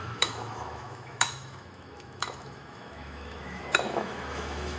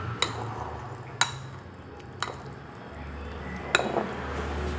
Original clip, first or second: second